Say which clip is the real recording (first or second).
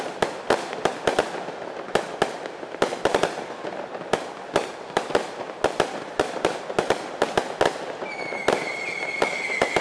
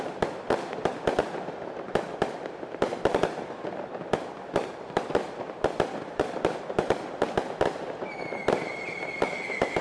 first